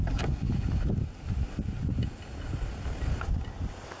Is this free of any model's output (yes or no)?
yes